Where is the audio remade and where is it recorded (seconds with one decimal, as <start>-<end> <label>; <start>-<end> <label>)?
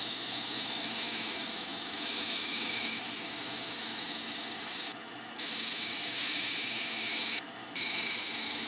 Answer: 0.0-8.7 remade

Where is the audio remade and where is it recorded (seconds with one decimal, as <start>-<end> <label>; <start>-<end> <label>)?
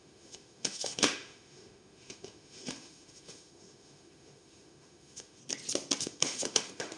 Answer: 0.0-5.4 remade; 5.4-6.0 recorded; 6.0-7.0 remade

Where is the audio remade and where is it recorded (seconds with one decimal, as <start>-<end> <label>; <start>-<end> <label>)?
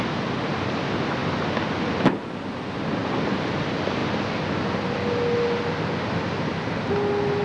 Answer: 0.0-7.4 recorded